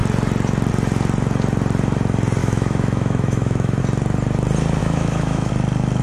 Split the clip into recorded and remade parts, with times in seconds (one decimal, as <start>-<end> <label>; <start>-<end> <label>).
0.0-2.4 recorded; 2.4-3.8 remade; 3.8-4.8 recorded; 4.8-5.5 remade; 5.5-6.0 recorded